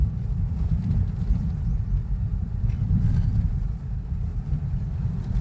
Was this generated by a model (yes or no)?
yes